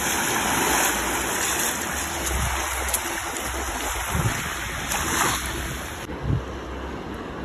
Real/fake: real